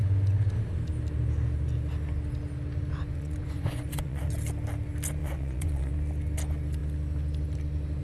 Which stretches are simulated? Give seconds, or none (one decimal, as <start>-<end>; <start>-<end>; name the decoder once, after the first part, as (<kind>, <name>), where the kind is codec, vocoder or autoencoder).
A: 3.1-4.3 (vocoder, Vocos); 5.2-5.9